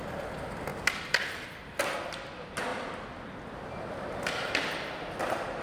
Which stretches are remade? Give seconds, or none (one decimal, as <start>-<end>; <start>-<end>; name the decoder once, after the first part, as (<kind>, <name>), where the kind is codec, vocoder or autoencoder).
none

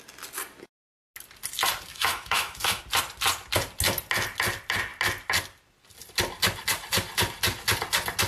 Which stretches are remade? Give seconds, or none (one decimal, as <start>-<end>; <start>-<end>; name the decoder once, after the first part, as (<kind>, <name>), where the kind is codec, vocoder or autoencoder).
1.9-2.8 (autoencoder, DAC-VAE)

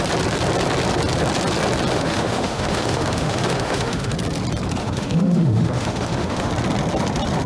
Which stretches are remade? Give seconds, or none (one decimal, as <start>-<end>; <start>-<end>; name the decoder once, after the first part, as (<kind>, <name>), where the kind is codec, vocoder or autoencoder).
1.9-4.1 (autoencoder, DAC-VAE); 4.8-6.5